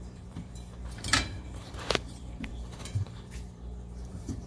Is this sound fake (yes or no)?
yes